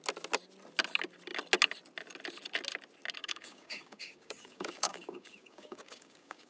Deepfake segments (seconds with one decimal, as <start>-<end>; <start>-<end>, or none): 3.2-6.5